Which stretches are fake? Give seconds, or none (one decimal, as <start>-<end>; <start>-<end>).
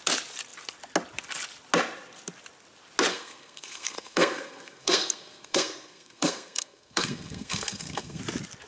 3.1-8.2